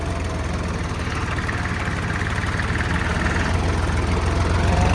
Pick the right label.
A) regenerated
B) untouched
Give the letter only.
B